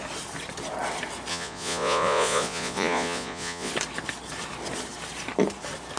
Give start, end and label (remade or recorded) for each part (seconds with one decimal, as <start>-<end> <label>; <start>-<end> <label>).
0.0-1.3 recorded; 1.3-3.7 remade; 3.7-6.0 recorded